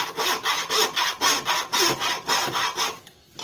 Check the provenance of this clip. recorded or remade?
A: recorded